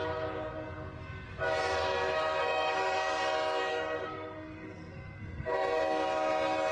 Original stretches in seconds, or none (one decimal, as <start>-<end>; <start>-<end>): 0.0-1.6; 3.2-3.7; 5.8-6.7